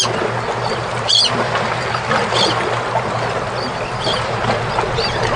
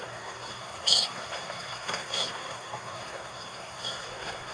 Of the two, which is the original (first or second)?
first